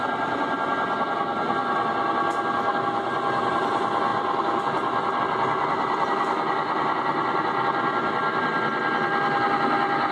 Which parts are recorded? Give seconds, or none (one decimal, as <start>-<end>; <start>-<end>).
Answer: 0.0-4.1; 5.2-10.1